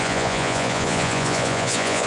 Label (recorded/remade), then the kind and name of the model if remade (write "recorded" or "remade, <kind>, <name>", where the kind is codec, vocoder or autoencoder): remade, vocoder, Vocos